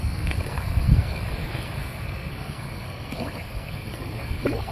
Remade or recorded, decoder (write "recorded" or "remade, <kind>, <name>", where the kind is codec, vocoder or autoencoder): remade, codec, SNAC